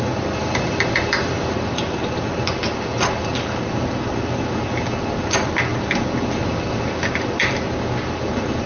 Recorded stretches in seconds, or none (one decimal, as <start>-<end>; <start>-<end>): 3.3-4.1; 5.7-8.2